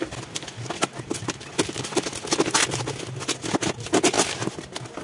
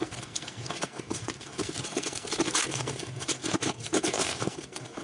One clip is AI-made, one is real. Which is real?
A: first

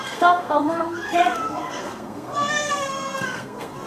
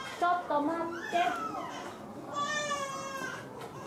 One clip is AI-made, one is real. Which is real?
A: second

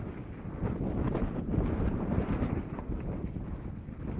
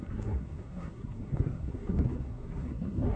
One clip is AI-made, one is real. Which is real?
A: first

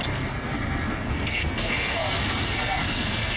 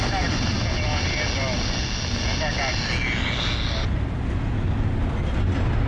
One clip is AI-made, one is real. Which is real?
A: second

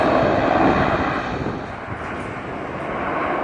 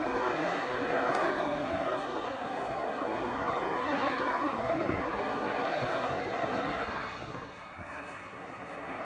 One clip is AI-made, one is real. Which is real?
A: first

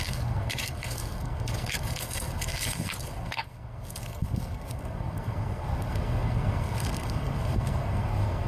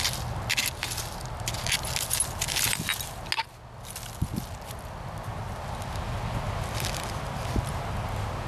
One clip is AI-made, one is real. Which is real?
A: second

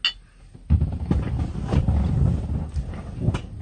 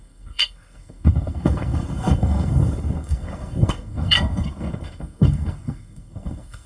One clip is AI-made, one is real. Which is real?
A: first